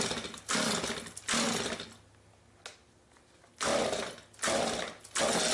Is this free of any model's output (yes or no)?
yes